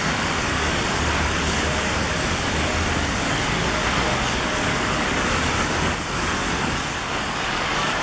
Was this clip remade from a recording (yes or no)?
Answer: yes